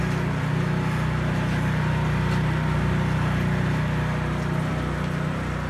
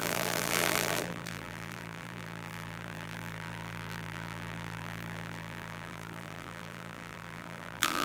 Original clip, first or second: first